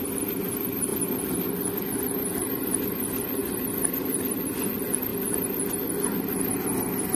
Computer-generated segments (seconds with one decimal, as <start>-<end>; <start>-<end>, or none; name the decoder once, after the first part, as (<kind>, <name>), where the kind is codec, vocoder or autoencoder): none